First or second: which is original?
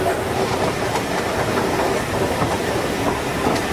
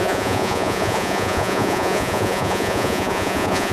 first